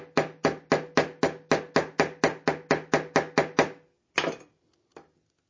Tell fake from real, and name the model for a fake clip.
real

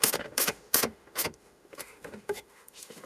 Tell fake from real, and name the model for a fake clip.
fake, autoencoder, DAC-VAE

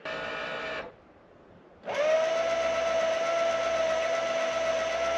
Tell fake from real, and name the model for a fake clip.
real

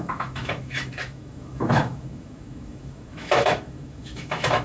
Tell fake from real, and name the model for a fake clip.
fake, autoencoder, DAC-VAE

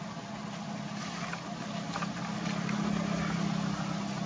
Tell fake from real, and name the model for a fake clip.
real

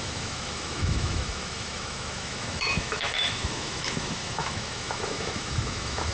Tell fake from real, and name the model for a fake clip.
fake, autoencoder, DAC-VAE